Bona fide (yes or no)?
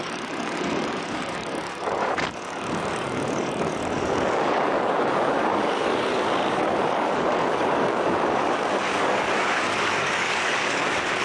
no